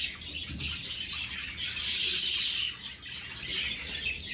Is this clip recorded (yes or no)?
yes